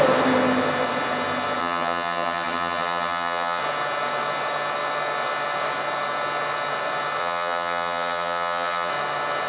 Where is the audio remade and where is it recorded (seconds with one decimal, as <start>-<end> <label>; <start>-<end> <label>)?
0.0-1.6 recorded; 1.6-3.6 remade; 3.6-7.2 recorded; 7.2-8.9 remade; 8.9-9.5 recorded

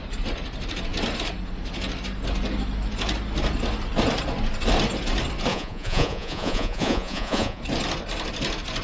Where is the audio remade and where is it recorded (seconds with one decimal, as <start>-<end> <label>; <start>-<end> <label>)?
0.0-5.5 recorded; 5.5-7.6 remade; 7.6-8.8 recorded